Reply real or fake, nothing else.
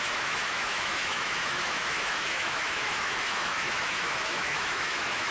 fake